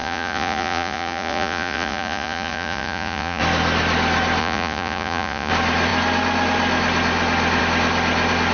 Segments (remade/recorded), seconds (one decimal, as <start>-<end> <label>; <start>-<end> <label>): 0.0-3.4 remade; 3.4-4.4 recorded; 4.4-5.5 remade; 5.5-8.5 recorded